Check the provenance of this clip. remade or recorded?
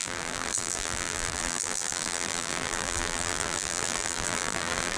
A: remade